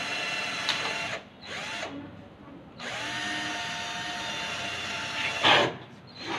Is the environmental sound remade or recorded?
recorded